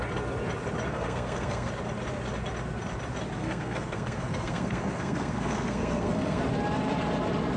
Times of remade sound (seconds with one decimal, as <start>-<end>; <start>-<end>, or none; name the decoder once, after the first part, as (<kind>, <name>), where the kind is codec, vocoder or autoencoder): 0.9-1.7 (codec, SNAC); 3.4-6.4